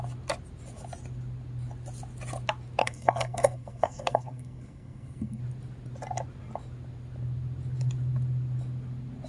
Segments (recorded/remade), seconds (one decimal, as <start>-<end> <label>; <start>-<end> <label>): 0.0-2.8 recorded; 2.8-5.4 remade; 5.4-9.3 recorded